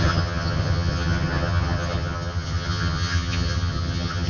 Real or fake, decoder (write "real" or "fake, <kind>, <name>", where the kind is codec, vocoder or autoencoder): fake, vocoder, HiFi-GAN